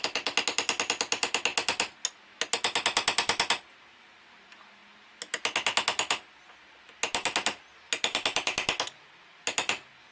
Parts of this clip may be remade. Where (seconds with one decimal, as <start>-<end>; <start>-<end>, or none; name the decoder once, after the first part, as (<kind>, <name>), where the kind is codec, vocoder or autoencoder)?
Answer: none